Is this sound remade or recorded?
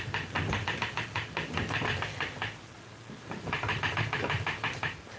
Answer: recorded